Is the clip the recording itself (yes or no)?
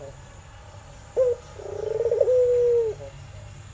yes